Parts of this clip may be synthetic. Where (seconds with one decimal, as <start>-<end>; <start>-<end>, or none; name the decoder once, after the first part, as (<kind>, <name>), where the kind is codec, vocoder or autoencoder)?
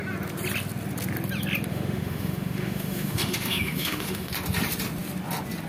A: 1.7-4.3 (autoencoder, DAC-VAE)